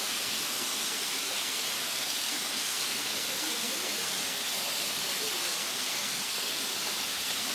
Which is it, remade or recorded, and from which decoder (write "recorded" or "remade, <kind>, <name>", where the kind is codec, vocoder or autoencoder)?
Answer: remade, codec, SNAC